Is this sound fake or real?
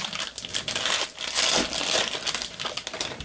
real